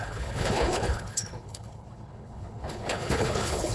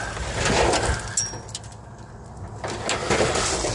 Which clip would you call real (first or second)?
second